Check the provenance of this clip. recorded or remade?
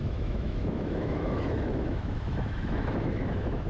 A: remade